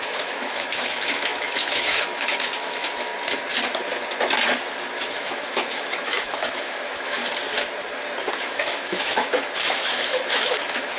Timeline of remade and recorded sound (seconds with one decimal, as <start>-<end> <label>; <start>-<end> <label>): 0.0-3.1 remade; 3.1-5.1 recorded; 5.1-7.2 remade; 7.2-8.3 recorded; 8.3-11.0 remade